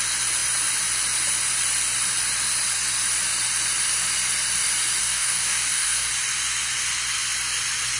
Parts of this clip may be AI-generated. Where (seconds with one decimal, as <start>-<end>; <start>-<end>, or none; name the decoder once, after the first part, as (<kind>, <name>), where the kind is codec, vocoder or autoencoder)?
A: 5.0-6.1 (codec, DAC)